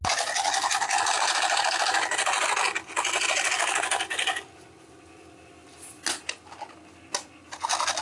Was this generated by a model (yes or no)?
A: no